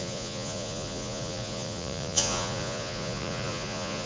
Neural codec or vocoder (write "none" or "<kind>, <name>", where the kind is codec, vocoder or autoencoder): vocoder, Vocos